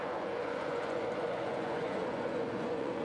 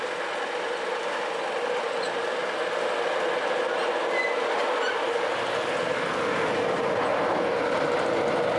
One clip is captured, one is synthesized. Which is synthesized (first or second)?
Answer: first